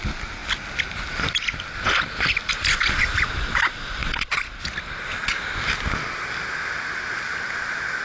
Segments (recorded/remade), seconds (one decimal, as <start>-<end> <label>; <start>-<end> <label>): 0.0-8.0 recorded